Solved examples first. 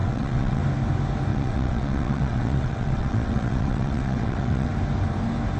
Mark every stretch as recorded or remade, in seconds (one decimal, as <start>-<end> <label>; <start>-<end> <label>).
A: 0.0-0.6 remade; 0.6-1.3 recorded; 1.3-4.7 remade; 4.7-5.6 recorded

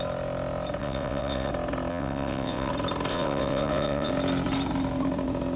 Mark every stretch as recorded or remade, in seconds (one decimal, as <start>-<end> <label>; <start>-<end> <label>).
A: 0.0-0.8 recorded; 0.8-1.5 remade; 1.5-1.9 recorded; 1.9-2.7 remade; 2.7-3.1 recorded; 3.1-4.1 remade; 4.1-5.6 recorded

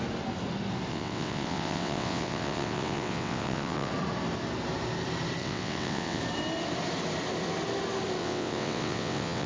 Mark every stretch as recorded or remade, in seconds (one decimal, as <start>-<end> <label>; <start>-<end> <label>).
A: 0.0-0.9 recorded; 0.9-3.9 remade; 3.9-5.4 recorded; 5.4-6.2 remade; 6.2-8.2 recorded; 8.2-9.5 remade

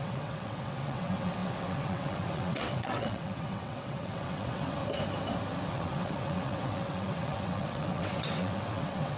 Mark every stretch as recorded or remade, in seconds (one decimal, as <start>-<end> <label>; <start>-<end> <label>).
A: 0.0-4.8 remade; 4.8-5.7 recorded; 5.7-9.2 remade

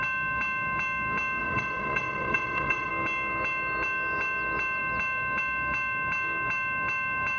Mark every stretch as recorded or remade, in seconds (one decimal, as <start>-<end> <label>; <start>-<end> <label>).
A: 0.0-1.4 recorded; 1.4-2.9 remade; 2.9-7.4 recorded

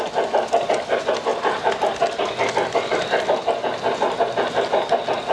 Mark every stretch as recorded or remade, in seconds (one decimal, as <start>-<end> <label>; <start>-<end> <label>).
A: 0.0-5.3 recorded